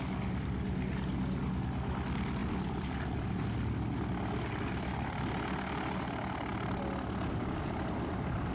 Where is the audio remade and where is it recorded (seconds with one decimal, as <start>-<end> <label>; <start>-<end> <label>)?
0.0-8.5 recorded